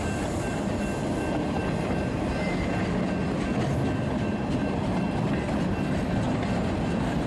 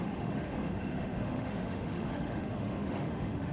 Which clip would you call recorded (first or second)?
first